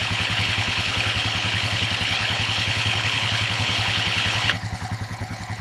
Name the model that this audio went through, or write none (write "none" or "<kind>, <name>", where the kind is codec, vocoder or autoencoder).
codec, HILCodec